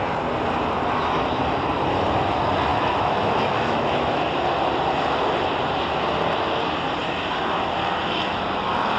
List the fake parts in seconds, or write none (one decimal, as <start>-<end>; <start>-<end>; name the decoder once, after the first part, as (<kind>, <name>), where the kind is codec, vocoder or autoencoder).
2.7-4.3 (autoencoder, DAC-VAE)